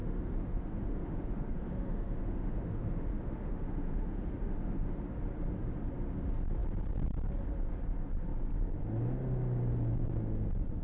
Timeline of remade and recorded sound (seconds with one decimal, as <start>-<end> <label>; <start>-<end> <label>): 0.0-4.9 remade; 4.9-10.8 recorded